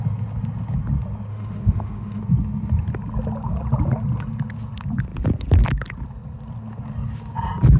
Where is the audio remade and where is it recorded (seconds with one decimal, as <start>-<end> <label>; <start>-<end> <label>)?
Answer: 0.0-1.3 recorded; 1.3-2.2 remade; 2.2-7.8 recorded